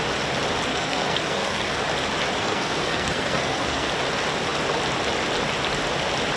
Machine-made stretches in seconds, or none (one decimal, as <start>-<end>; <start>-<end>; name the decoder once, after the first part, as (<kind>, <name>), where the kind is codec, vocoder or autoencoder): 0.7-1.8 (codec, SNAC); 2.4-3.9